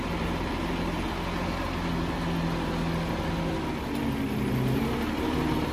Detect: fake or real real